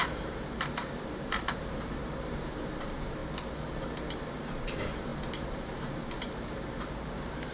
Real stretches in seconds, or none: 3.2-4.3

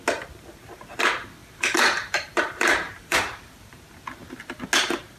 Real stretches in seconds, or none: 0.0-1.4; 3.8-5.2

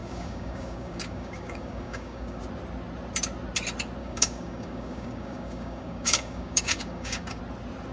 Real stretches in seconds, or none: 2.4-4.0; 7.4-7.9

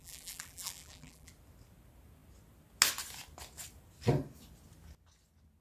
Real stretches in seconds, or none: 1.3-5.6

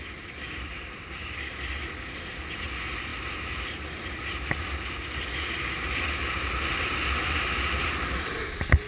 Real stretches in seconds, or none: 0.0-8.9

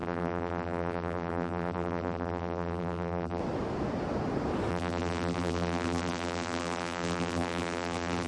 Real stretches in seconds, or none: 3.4-4.7

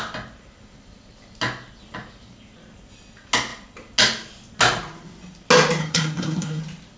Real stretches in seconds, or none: 0.0-5.8; 6.6-7.0